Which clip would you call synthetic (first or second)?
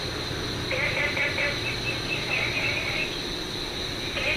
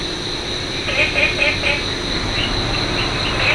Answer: first